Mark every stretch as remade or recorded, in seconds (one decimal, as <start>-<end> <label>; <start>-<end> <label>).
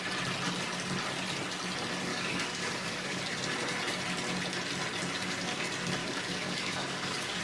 0.0-2.1 recorded; 2.1-3.2 remade; 3.2-6.0 recorded; 6.0-7.4 remade